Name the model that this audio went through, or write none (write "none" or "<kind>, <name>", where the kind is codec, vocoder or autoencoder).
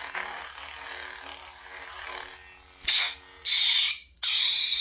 none